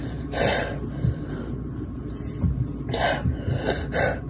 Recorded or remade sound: remade